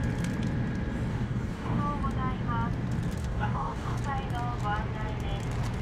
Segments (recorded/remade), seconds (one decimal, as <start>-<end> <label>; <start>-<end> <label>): 0.0-1.1 recorded; 1.1-1.8 remade; 1.8-3.2 recorded; 3.2-4.0 remade; 4.0-5.8 recorded